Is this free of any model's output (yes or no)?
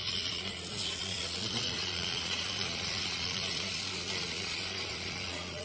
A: no